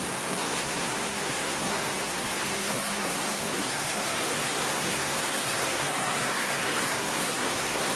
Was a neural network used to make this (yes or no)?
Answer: yes